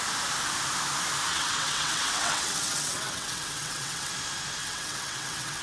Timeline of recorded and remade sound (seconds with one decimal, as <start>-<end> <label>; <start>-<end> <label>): 0.0-1.3 recorded; 1.3-4.1 remade; 4.1-4.6 recorded; 4.6-5.6 remade

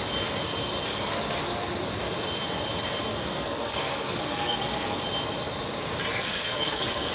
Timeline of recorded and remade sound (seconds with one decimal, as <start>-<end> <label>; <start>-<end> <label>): 0.0-3.1 recorded; 3.1-5.0 remade; 5.0-6.1 recorded; 6.1-7.1 remade